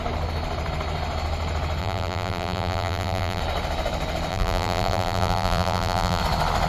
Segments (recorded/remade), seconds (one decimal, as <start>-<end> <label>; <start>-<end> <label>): 0.0-1.8 recorded; 1.8-3.4 remade; 3.4-4.3 recorded; 4.3-6.2 remade; 6.2-6.7 recorded